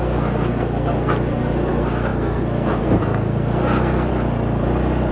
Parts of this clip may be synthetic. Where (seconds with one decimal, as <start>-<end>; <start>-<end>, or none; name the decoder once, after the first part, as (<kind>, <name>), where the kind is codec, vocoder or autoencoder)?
0.0-4.1 (codec, SNAC)